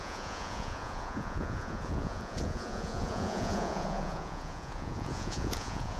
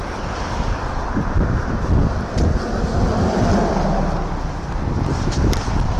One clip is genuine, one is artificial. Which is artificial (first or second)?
first